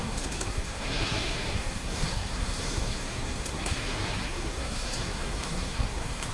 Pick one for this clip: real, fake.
fake